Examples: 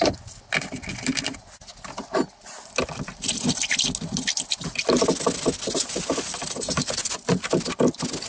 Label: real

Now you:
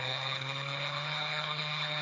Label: fake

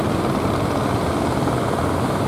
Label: real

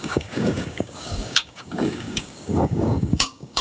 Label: fake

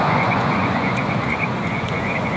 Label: fake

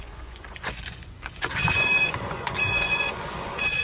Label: fake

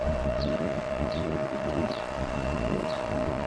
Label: fake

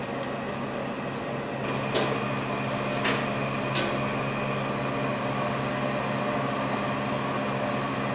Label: real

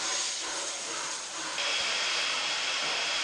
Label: fake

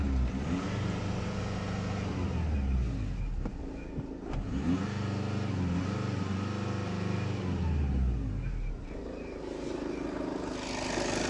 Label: real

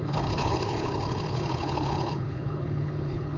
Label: fake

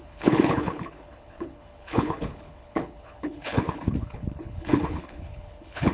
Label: fake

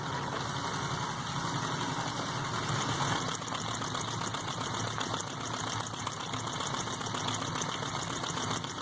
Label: real